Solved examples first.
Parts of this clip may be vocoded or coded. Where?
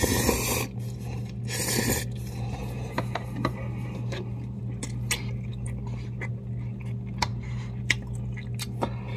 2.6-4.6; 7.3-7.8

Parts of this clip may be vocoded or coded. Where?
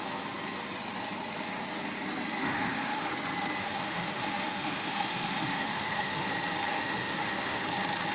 2.4-3.1; 3.6-6.3; 6.7-7.6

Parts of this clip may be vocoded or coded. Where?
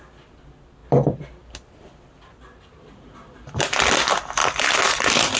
none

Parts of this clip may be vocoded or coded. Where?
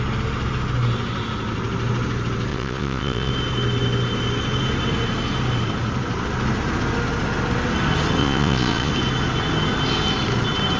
2.5-3.3; 8.2-8.9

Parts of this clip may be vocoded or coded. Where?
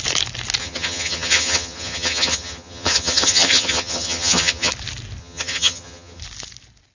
0.6-4.7; 5.2-6.2